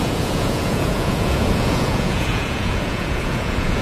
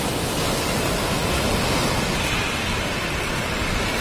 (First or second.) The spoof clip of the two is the first